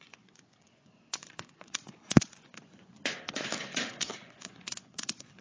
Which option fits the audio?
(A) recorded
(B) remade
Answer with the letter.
B